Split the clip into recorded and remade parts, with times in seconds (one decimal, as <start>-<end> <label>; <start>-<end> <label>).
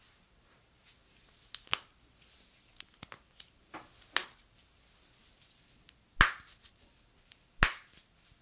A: 0.0-8.4 recorded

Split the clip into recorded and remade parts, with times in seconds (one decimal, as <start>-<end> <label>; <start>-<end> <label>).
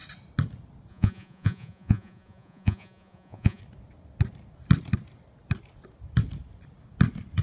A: 0.0-0.9 recorded; 0.9-3.6 remade; 3.6-7.4 recorded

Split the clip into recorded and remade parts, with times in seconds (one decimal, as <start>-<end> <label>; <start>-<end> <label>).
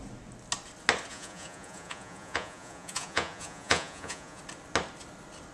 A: 0.0-1.1 recorded; 1.1-4.4 remade; 4.4-5.5 recorded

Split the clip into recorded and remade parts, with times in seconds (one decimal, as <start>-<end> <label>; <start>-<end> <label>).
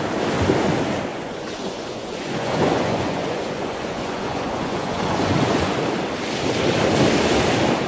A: 0.0-1.1 recorded; 1.1-5.8 remade; 5.8-7.9 recorded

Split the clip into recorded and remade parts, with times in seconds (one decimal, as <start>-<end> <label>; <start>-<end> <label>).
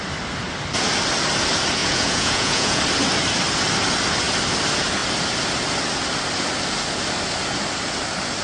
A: 0.0-1.8 recorded; 1.8-2.8 remade; 2.8-8.4 recorded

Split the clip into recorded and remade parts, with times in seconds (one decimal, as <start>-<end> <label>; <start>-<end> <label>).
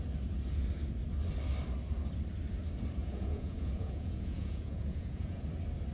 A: 0.0-3.0 recorded; 3.0-5.4 remade; 5.4-5.9 recorded